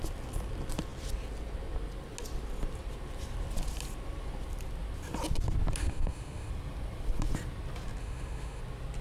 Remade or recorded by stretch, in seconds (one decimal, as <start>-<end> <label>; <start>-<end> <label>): 0.0-5.8 recorded; 5.8-6.5 remade; 6.5-8.0 recorded; 8.0-8.6 remade; 8.6-9.0 recorded